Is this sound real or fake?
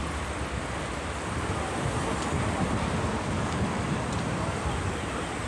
fake